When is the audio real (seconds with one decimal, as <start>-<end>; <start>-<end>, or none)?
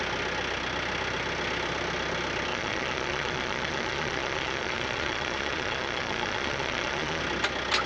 0.0-2.5; 7.2-7.9